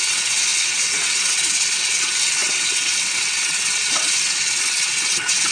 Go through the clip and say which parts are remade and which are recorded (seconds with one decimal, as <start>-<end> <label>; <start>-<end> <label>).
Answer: 0.0-5.5 remade